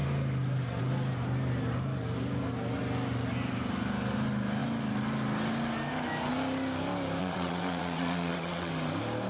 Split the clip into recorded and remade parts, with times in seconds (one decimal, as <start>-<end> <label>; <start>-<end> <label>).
0.0-7.2 recorded; 7.2-8.7 remade; 8.7-9.3 recorded